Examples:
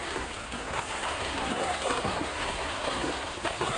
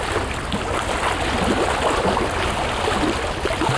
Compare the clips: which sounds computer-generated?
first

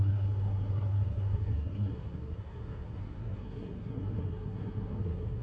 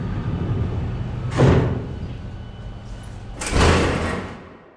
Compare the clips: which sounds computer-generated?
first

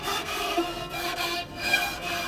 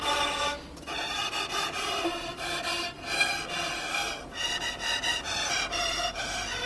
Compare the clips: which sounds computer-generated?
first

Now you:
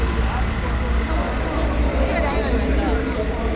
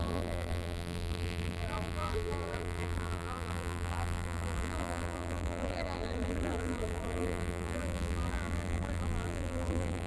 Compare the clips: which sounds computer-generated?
second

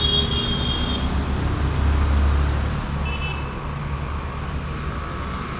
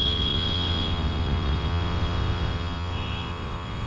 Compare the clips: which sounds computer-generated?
second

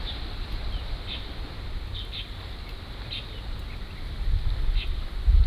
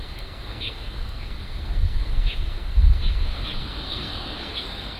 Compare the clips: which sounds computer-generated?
second